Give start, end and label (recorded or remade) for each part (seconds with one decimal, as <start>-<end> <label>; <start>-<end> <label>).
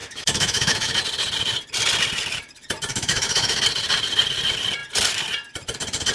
0.0-1.0 remade; 1.0-2.9 recorded; 2.9-3.6 remade; 3.6-6.1 recorded